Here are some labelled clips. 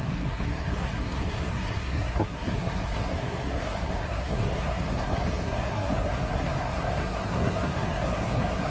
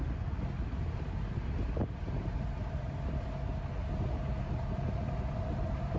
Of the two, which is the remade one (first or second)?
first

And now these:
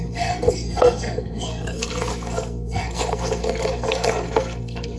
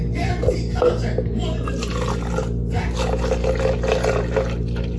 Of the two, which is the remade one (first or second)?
first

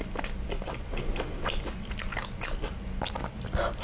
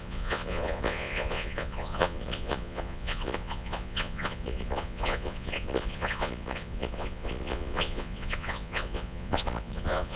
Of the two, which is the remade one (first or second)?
second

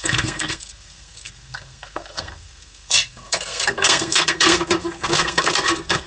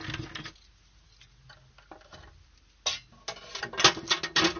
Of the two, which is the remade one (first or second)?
first